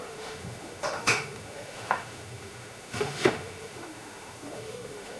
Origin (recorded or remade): remade